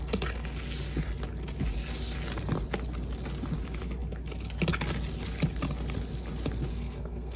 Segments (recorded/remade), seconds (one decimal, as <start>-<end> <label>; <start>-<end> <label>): 0.0-6.7 recorded; 6.7-7.4 remade